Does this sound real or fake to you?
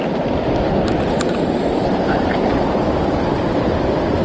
real